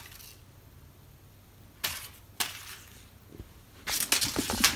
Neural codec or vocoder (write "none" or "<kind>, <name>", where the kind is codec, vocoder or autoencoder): none